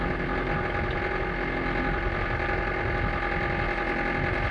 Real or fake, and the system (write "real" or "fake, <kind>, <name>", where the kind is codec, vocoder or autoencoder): real